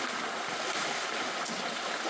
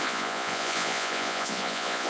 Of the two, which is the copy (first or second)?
second